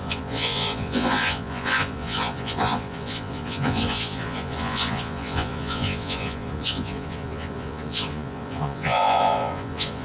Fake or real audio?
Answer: fake